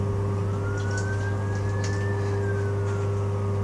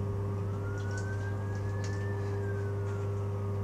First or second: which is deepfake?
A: first